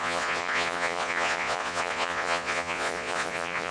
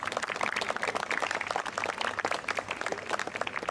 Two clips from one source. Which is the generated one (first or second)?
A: first